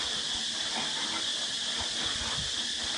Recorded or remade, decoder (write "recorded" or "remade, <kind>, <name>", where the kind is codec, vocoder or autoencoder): recorded